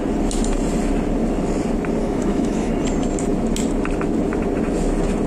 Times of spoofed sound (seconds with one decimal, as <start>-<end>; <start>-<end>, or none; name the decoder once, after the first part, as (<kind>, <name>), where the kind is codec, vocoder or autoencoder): 2.0-2.7 (autoencoder, DAC-VAE)